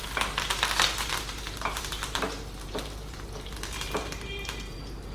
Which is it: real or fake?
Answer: fake